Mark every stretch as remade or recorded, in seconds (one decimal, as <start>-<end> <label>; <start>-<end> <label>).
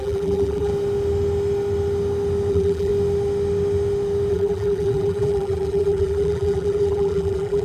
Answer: 0.0-0.7 remade; 0.7-2.5 recorded; 2.5-2.9 remade; 2.9-4.3 recorded; 4.3-7.6 remade